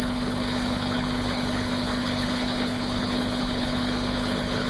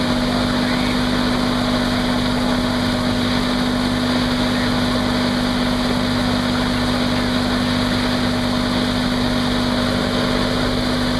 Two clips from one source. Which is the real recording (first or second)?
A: second